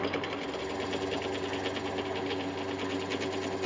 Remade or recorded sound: recorded